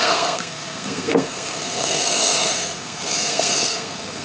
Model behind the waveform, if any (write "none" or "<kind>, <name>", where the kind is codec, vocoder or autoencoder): codec, SNAC